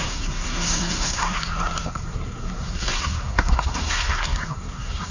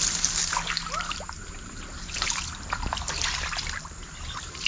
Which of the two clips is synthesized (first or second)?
first